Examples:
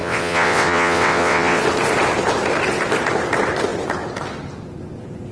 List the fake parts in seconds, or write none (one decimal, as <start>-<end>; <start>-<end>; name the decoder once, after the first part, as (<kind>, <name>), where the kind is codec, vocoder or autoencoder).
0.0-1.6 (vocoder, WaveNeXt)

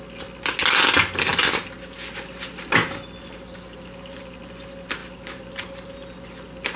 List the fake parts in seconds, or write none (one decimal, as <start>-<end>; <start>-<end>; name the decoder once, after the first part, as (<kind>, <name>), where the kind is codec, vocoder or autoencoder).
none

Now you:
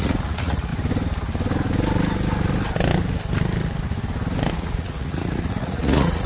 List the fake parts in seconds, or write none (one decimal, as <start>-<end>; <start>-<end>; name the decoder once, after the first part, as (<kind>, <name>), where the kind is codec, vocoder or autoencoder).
0.0-0.7 (vocoder, Vocos); 4.5-6.3

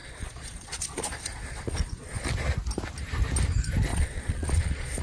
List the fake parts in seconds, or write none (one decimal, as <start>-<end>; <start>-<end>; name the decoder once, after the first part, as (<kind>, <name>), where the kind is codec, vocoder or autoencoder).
0.0-2.3 (vocoder, Vocos); 3.9-5.0